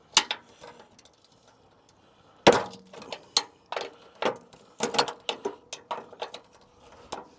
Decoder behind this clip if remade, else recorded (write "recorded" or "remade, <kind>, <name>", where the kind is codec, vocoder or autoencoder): recorded